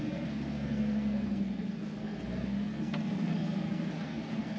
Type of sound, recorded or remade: remade